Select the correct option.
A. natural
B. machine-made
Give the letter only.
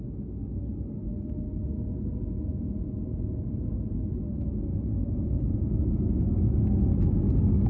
A